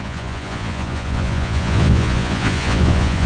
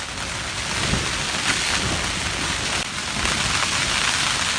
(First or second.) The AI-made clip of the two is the first